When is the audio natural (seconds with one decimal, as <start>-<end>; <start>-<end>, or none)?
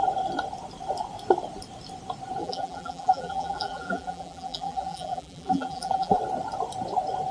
0.0-2.4; 6.2-7.3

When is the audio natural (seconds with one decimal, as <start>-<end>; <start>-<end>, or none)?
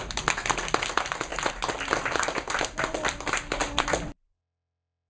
0.0-1.3; 4.4-5.1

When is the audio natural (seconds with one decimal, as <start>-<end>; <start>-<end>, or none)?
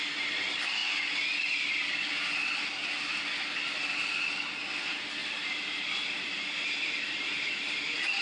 0.0-5.2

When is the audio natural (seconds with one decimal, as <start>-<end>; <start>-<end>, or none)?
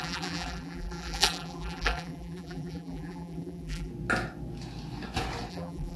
3.9-5.5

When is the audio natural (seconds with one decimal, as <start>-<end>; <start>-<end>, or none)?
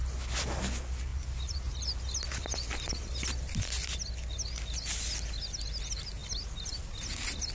0.0-1.1; 2.0-7.5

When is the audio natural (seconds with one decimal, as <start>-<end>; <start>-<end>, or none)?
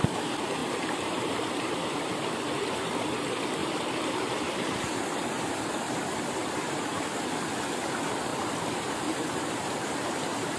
0.0-0.6; 2.1-3.6; 7.1-8.3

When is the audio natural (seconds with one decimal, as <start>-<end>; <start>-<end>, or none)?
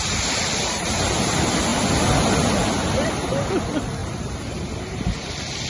0.0-4.0; 5.3-5.7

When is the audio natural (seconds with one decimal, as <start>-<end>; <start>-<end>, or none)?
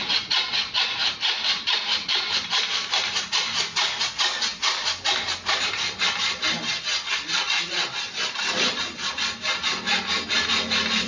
0.0-1.0; 3.3-11.1